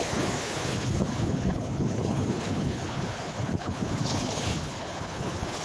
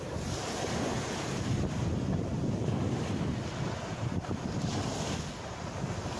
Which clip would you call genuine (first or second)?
second